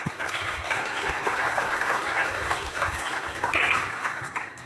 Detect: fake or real fake